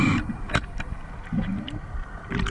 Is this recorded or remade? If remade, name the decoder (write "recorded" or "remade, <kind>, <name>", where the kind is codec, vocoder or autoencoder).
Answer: recorded